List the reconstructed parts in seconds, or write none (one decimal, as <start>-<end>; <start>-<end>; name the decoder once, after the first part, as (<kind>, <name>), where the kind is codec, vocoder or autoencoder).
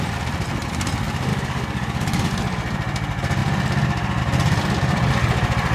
1.3-2.3 (codec, DAC)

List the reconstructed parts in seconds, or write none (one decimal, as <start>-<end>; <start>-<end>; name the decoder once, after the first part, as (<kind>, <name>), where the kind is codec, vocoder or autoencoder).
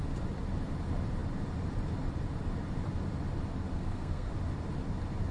3.7-4.3 (codec, SNAC)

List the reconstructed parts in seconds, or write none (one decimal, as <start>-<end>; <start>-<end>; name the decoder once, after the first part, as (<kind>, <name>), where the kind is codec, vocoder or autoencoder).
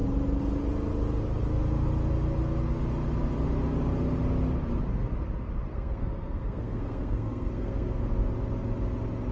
5.7-8.0 (codec, SNAC)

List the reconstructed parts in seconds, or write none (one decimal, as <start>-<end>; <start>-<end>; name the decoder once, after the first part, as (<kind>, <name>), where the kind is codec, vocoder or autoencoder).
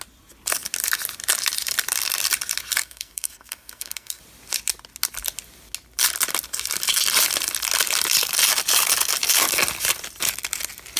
2.8-4.2 (codec, SNAC)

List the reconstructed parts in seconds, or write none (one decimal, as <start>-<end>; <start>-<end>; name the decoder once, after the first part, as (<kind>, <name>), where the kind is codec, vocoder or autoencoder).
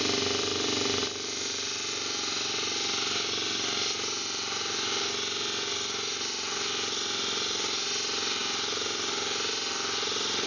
none